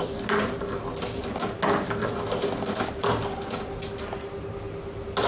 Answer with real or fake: real